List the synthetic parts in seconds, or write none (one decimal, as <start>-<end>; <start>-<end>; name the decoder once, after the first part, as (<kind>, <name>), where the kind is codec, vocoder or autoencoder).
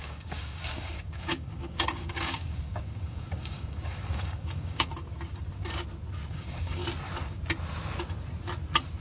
0.0-4.9 (codec, DAC); 6.3-6.8